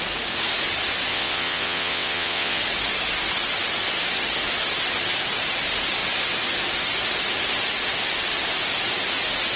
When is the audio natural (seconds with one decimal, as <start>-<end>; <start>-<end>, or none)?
0.0-1.1; 2.6-9.6